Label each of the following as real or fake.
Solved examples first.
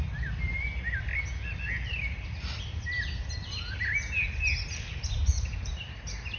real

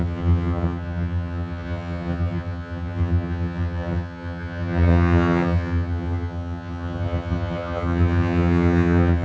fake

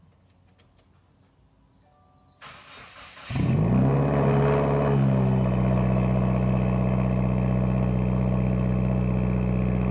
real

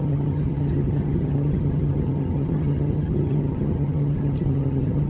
fake